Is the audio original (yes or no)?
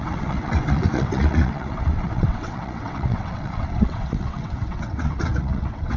no